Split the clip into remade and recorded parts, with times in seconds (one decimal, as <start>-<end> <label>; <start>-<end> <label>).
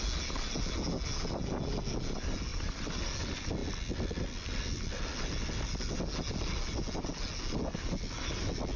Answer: 0.0-8.8 recorded